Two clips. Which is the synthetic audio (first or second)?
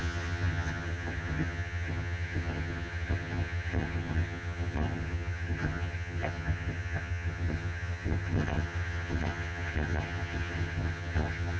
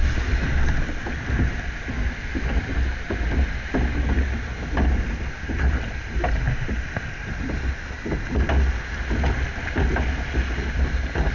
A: first